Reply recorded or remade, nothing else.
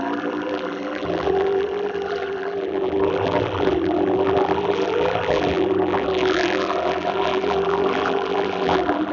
remade